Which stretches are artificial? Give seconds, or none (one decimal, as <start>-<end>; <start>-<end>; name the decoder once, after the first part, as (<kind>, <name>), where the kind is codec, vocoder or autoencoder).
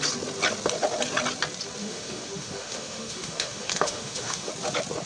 1.8-4.5 (autoencoder, DAC-VAE)